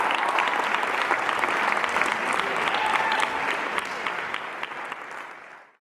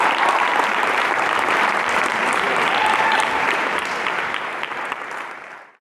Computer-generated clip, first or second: second